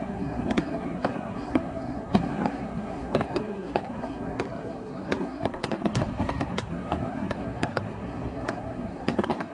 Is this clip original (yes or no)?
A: no